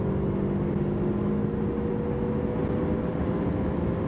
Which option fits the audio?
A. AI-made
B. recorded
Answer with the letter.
B